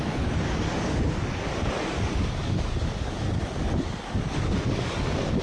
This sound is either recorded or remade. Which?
remade